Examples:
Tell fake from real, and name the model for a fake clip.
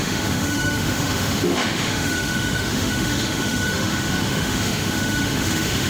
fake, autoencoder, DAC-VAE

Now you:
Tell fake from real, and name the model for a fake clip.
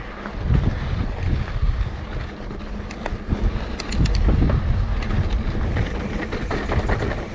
real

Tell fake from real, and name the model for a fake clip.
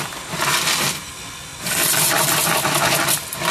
real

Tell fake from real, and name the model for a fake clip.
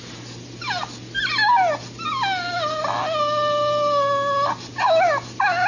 real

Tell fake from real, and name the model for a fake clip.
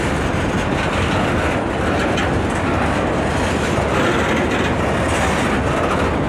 real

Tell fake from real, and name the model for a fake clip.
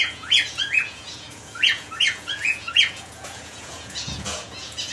fake, vocoder, Vocos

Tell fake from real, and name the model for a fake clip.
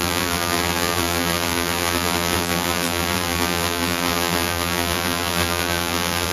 fake, vocoder, BigVGAN v2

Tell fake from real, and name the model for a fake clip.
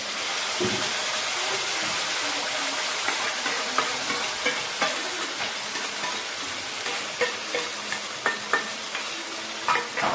real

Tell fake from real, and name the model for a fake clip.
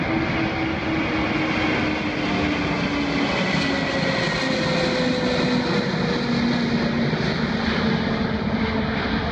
real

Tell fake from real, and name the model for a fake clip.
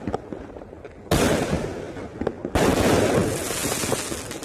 real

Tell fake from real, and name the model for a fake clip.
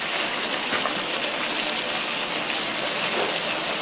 real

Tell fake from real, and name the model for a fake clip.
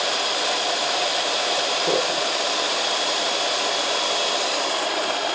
fake, vocoder, BigVGAN v2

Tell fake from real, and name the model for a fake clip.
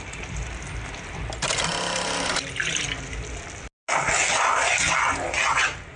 real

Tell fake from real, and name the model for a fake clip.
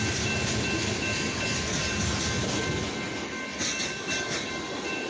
real